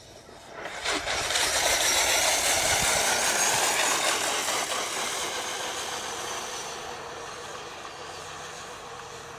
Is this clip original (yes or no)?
yes